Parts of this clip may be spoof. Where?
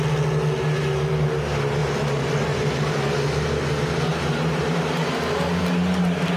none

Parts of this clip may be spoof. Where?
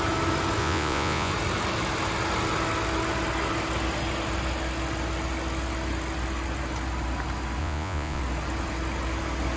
0.6-1.3 (vocoder, Vocos); 7.6-8.2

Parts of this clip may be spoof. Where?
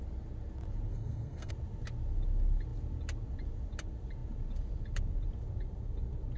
0.9-1.5 (codec, SNAC)